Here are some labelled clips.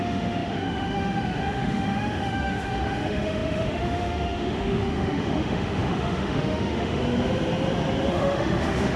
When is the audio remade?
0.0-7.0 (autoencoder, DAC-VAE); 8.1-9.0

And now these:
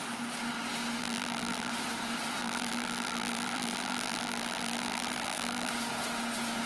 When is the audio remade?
1.0-1.7 (vocoder, BigVGAN v2); 2.4-5.7

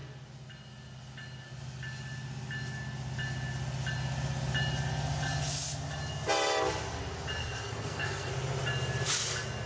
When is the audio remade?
7.4-8.3 (codec, SNAC)

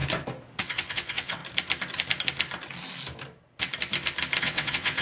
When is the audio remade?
0.6-1.4 (vocoder, WaveNeXt); 4.4-5.0

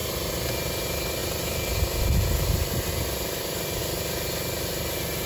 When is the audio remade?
1.2-2.9 (vocoder, BigVGAN v2)

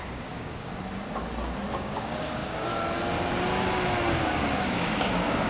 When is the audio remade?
0.0-0.7 (codec, DAC); 1.7-2.7; 4.5-5.5

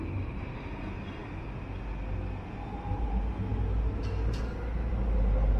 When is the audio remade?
none